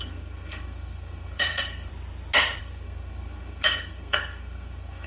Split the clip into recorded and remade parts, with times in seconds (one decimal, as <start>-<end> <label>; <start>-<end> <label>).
0.0-1.9 remade; 1.9-2.6 recorded; 2.6-5.1 remade